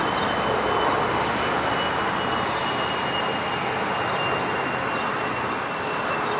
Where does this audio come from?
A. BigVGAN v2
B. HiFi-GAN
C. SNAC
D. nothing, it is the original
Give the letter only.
D